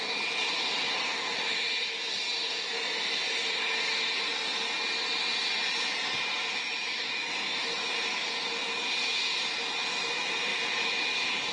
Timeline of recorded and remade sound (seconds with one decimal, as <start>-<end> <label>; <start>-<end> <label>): 0.0-6.5 recorded; 6.5-8.0 remade; 8.0-11.5 recorded